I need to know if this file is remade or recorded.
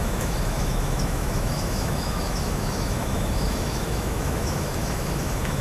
remade